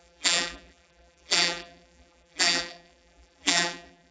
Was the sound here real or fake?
fake